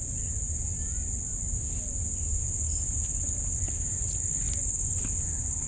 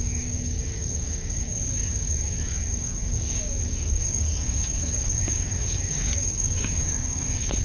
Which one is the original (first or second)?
first